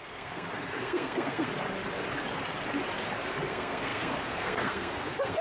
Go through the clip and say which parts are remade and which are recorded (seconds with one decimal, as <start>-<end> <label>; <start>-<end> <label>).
0.0-1.5 remade; 1.5-3.5 recorded; 3.5-5.4 remade